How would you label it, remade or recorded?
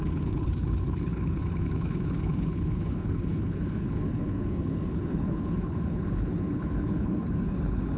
remade